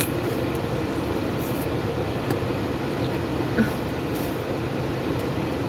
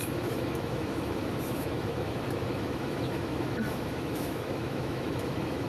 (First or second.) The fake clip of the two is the second